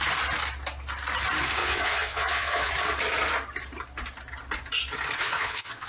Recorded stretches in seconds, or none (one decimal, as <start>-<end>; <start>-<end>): 0.0-1.6; 2.7-5.2